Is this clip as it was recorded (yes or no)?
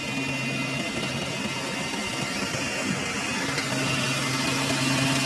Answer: yes